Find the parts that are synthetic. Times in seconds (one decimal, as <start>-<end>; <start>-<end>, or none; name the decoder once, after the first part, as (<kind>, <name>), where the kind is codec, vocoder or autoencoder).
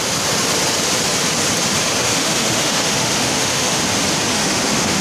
2.0-3.8 (autoencoder, DAC-VAE); 4.3-5.0